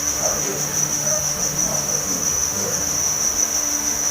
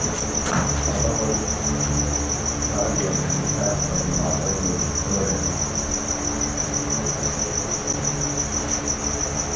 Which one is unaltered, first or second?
second